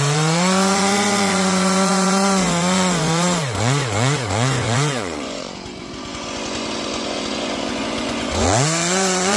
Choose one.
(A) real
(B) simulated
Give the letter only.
B